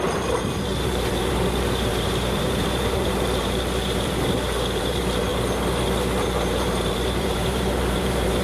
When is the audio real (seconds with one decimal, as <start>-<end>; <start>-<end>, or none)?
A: 5.3-6.2

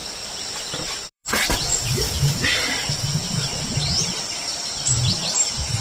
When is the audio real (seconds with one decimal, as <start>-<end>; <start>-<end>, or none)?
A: 0.0-0.5

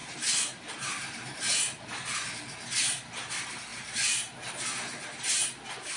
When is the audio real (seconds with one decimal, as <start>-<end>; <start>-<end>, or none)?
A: 1.4-3.7; 4.5-6.0

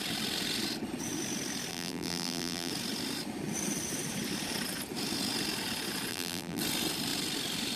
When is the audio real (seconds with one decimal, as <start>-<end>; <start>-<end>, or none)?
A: 0.0-1.7; 2.7-6.1; 6.6-7.8

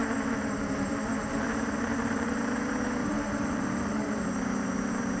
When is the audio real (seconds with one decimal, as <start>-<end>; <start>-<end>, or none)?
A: none

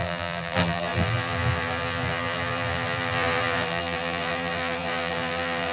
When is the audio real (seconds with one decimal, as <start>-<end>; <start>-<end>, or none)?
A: none

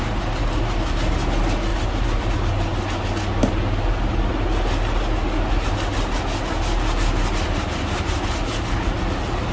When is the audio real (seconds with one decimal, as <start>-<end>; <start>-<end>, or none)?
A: 0.0-1.7; 2.3-9.5